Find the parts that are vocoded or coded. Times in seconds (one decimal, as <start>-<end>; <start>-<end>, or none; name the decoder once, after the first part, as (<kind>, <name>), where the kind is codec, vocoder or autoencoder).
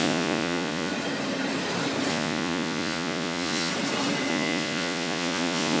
0.0-0.9 (vocoder, Vocos); 2.1-3.7; 4.3-5.8